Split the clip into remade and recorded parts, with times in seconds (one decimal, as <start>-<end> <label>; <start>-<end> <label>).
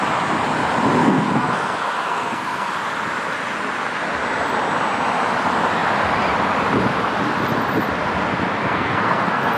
0.0-1.0 recorded; 1.0-2.7 remade; 2.7-8.6 recorded; 8.6-9.6 remade